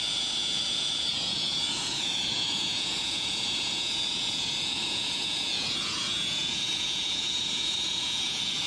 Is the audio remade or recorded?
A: remade